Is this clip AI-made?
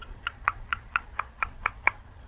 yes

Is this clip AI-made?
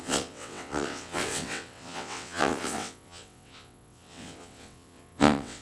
yes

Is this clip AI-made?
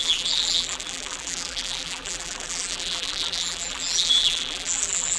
yes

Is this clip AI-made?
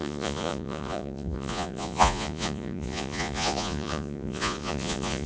yes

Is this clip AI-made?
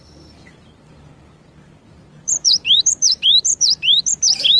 yes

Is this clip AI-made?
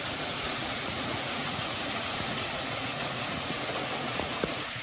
yes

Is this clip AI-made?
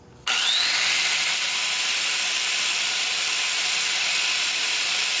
yes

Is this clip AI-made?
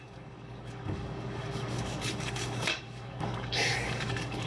yes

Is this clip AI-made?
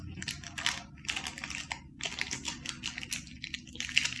no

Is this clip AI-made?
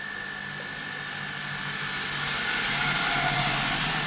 no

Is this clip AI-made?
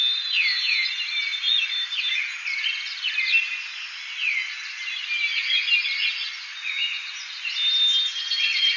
no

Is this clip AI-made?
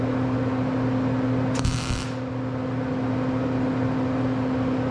no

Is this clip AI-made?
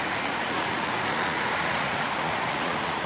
yes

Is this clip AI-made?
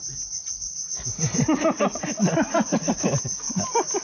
no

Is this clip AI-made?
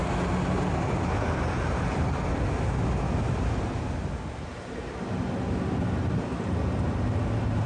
no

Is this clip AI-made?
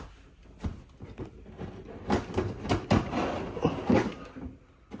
no